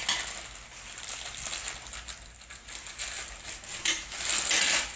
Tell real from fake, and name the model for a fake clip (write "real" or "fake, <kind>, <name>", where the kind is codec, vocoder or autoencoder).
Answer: real